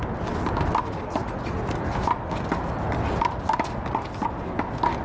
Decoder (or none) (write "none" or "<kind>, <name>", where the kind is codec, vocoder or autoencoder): none